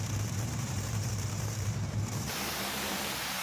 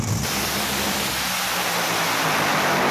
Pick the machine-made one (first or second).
first